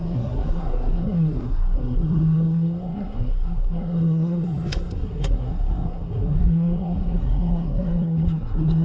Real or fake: fake